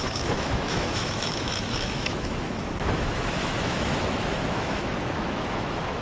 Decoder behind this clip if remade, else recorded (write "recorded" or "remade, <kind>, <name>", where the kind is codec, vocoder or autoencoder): remade, autoencoder, DAC-VAE